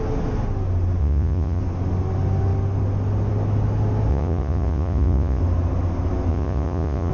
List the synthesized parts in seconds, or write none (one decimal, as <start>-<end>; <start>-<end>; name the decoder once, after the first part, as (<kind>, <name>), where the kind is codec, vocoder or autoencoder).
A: 1.0-1.6 (vocoder, Vocos); 4.1-5.4; 6.3-7.1